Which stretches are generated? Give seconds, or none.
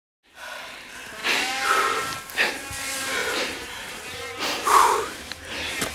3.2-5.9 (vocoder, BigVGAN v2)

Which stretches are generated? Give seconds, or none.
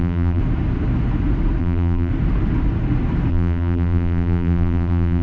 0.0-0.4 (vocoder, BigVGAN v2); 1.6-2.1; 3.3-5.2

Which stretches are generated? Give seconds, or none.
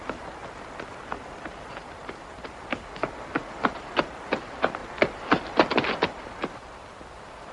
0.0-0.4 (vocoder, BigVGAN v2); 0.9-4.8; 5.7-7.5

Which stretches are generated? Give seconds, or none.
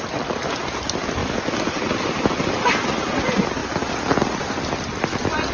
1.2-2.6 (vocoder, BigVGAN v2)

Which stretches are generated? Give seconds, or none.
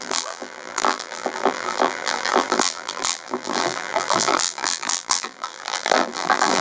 0.0-6.6 (vocoder, BigVGAN v2)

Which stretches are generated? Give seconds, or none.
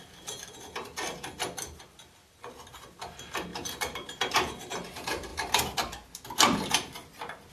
3.5-4.7 (vocoder, BigVGAN v2)